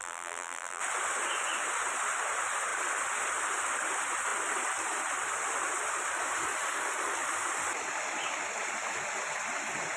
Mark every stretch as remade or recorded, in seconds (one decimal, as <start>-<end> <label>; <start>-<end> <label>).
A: 0.0-0.8 remade; 0.8-10.0 recorded